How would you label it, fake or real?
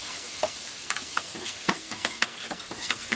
fake